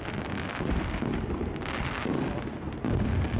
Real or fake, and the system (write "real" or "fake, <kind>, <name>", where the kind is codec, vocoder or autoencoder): real